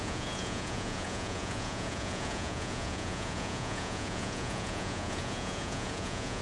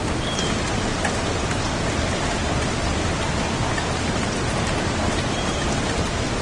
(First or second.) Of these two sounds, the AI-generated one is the first